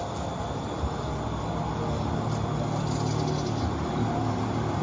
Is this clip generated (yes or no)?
no